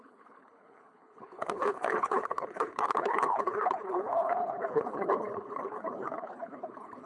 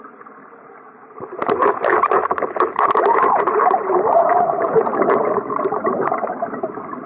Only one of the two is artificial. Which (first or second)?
first